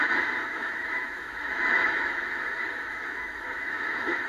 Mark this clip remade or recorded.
remade